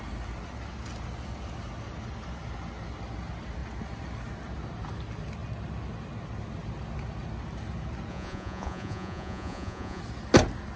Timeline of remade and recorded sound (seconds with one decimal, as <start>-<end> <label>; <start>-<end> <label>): 0.0-8.1 recorded; 8.1-10.0 remade; 10.0-10.8 recorded